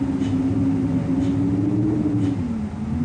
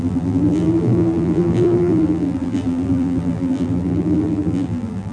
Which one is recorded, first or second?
first